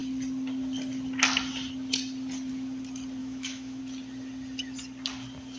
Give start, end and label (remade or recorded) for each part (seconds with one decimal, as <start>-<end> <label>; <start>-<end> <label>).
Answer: 0.0-3.2 recorded; 3.2-3.8 remade; 3.8-5.6 recorded